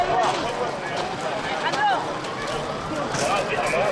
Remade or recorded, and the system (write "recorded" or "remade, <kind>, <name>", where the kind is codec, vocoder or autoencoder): recorded